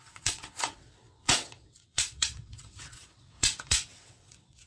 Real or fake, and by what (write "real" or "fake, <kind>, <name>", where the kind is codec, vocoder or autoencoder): fake, vocoder, WaveNeXt